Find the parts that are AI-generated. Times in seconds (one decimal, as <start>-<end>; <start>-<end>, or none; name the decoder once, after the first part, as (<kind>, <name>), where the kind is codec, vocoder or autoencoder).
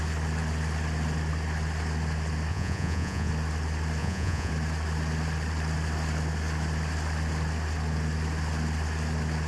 2.5-3.3 (vocoder, Vocos); 4.0-4.5